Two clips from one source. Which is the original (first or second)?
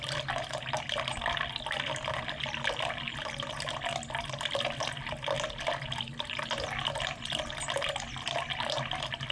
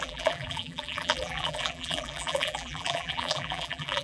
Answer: first